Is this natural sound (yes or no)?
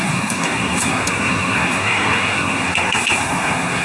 no